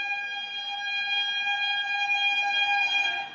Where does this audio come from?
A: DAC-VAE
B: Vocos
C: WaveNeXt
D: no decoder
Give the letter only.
D